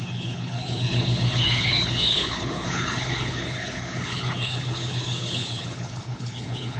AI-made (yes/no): yes